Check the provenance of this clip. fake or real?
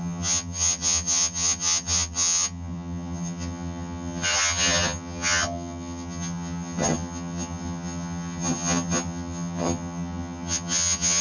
fake